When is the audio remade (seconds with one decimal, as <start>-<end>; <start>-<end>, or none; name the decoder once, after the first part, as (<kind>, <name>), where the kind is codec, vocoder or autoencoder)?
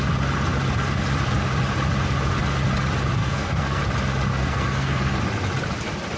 3.2-3.8 (codec, SNAC); 4.3-5.2